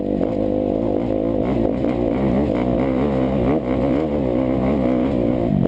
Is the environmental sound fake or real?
real